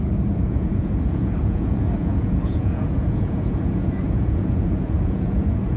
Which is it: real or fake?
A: fake